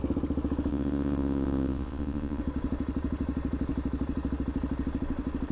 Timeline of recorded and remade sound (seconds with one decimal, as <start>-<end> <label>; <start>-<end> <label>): 0.0-0.7 recorded; 0.7-2.4 remade; 2.4-5.5 recorded

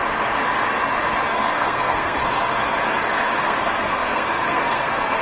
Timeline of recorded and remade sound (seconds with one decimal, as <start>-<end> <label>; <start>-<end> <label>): 0.0-1.4 recorded; 1.4-2.2 remade; 2.2-3.4 recorded; 3.4-5.2 remade

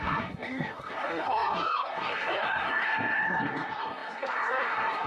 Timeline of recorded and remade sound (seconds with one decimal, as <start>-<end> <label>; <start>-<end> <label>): 0.0-5.1 remade

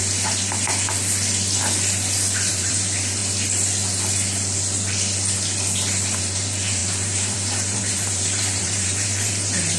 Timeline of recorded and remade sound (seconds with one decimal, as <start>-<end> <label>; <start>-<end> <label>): 0.0-2.5 recorded; 2.5-3.2 remade; 3.2-6.2 recorded; 6.2-9.8 remade

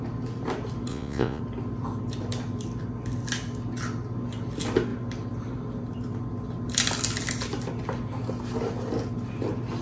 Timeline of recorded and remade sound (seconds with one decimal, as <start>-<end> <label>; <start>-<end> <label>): 0.0-0.9 recorded; 0.9-1.4 remade; 1.4-9.8 recorded